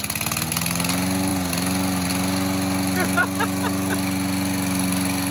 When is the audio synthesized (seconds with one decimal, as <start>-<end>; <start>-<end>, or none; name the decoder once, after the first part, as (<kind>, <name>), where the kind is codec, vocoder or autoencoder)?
none